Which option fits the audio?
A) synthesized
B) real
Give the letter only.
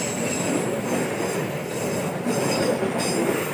B